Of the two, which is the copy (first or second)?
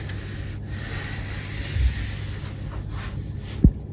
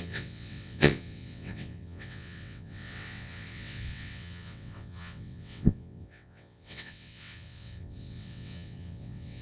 second